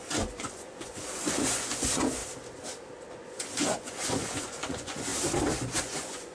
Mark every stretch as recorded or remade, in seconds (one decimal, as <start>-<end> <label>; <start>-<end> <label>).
0.0-2.2 remade; 2.2-3.1 recorded; 3.1-5.1 remade; 5.1-5.8 recorded; 5.8-6.3 remade

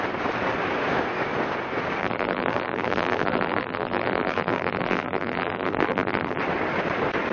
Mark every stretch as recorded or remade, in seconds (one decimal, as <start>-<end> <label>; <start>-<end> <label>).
0.0-2.0 recorded; 2.0-6.4 remade; 6.4-7.3 recorded

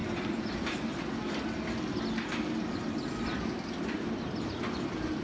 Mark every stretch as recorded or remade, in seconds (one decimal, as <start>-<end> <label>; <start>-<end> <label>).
0.0-5.2 recorded

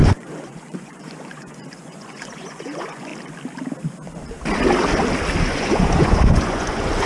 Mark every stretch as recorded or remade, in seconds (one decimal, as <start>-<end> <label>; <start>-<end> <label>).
0.0-3.1 remade; 3.1-5.4 recorded; 5.4-7.1 remade

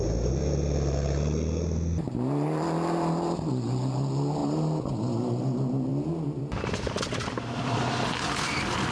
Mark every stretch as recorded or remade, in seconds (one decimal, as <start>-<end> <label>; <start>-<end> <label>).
0.0-8.9 recorded

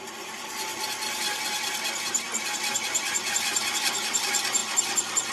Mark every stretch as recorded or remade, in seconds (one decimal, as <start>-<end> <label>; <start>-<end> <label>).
0.0-5.3 recorded